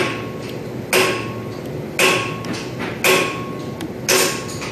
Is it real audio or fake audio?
real